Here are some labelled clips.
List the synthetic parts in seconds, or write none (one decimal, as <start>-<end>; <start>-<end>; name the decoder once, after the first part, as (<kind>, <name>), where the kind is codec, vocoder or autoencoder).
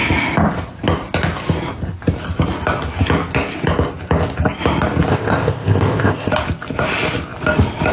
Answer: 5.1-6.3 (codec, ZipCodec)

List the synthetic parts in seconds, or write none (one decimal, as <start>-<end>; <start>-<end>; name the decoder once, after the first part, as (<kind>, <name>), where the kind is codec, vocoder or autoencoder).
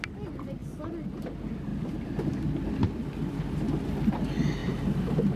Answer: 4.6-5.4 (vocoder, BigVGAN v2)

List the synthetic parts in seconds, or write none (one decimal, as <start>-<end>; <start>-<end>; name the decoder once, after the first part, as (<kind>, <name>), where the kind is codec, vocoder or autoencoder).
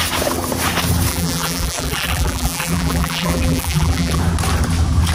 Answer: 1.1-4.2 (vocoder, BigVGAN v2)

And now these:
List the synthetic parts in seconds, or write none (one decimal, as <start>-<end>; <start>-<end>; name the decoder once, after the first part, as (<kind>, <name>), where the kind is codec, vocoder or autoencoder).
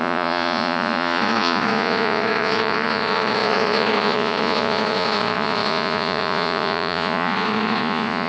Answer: 0.0-8.3 (vocoder, Vocos)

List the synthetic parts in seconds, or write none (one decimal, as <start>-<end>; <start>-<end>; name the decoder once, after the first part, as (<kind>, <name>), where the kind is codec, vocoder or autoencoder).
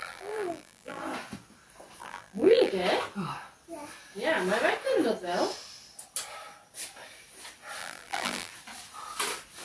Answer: 0.0-1.0 (vocoder, BigVGAN v2); 2.0-2.7; 7.8-8.5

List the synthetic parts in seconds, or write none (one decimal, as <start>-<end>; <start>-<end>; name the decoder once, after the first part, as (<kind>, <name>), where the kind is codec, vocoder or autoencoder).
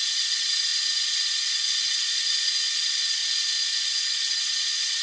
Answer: 0.0-3.2 (vocoder, Vocos); 3.8-5.0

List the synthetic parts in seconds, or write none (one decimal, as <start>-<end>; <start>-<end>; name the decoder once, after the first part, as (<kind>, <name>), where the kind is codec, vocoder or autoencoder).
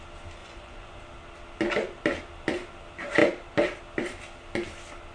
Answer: 0.4-1.0 (vocoder, Vocos)